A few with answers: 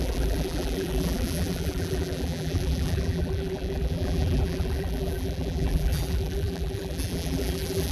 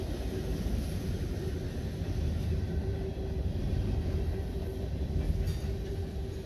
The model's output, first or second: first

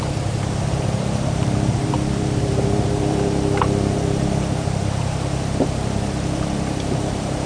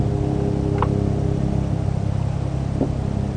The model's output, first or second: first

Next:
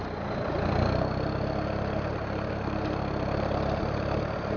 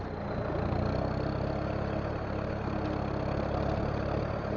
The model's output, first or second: first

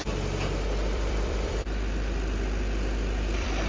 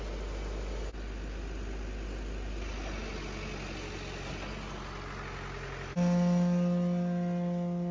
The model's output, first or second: first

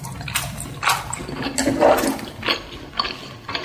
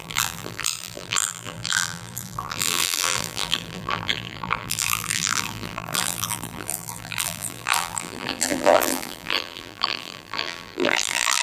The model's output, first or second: second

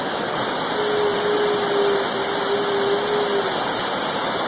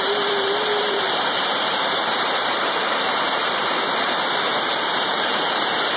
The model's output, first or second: second